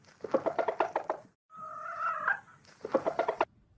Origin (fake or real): real